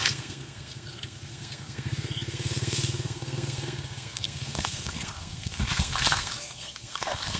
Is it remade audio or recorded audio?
remade